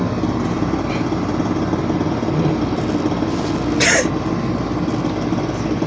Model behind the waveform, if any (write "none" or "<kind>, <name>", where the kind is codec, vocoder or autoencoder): none